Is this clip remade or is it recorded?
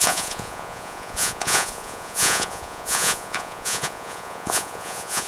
remade